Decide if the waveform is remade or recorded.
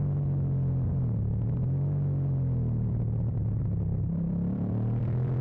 remade